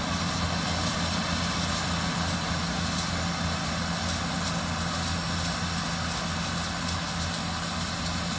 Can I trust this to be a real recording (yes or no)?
yes